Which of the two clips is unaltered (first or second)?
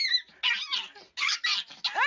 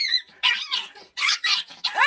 first